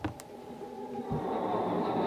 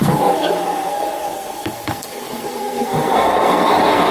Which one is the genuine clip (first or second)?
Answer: first